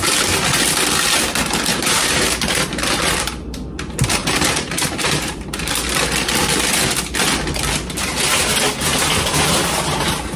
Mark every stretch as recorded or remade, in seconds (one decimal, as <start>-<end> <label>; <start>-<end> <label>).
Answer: 0.0-1.7 recorded; 1.7-3.0 remade; 3.0-4.2 recorded; 4.2-5.7 remade; 5.7-10.4 recorded